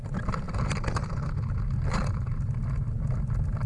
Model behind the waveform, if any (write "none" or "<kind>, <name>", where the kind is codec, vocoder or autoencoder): none